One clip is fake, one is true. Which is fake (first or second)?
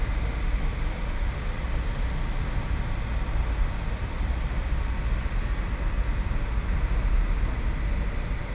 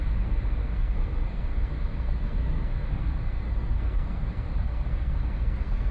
second